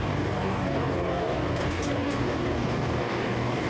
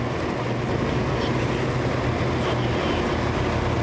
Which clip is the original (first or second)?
second